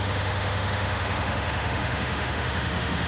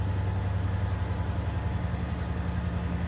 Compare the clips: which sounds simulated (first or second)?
first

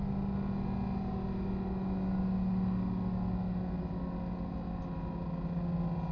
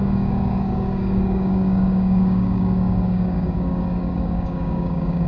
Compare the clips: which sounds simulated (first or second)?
second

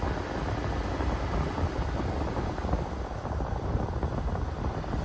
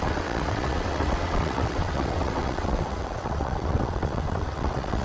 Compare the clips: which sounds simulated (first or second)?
second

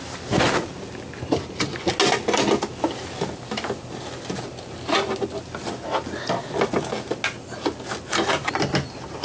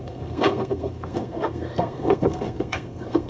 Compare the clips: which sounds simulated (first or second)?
second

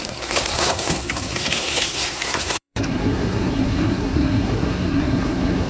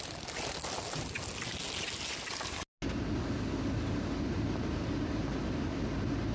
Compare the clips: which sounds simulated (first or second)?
first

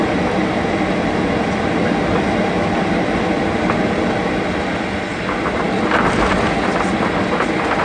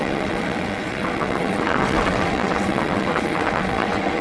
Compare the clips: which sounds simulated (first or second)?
second